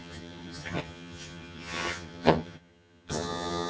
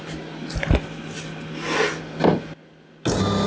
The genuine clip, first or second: second